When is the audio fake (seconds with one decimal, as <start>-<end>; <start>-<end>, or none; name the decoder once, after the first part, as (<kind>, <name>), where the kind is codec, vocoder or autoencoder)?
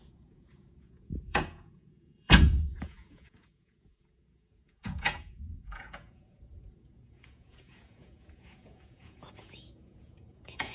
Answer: 0.0-10.7 (vocoder, Vocos)